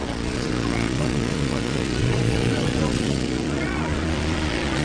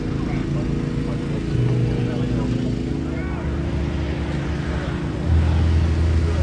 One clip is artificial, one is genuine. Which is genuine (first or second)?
second